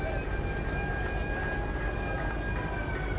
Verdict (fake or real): real